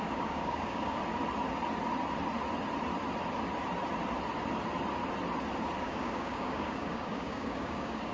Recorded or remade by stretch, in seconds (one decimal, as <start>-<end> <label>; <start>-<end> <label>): 0.0-1.0 remade; 1.0-5.8 recorded; 5.8-8.1 remade